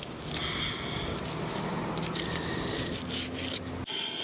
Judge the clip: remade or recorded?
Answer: recorded